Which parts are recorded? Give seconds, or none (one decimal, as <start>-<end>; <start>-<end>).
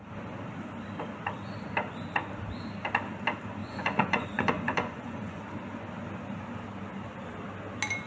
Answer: 0.0-3.6; 5.4-8.1